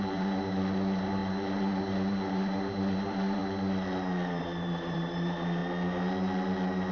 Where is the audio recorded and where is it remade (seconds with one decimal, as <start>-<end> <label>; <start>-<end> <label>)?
0.0-3.4 remade; 3.4-4.4 recorded; 4.4-5.6 remade; 5.6-6.9 recorded

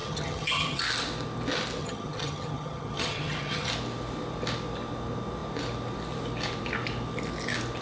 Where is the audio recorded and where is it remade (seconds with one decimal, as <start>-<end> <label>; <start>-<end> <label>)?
0.0-0.8 remade; 0.8-1.8 recorded; 1.8-3.7 remade; 3.7-7.8 recorded